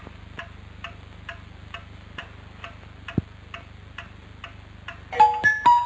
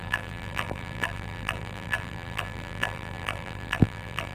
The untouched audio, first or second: first